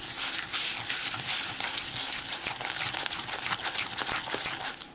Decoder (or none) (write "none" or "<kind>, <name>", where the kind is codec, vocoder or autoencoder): none